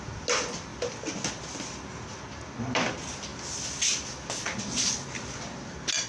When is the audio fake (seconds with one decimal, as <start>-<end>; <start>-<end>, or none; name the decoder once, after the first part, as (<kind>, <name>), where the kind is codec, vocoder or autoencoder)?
none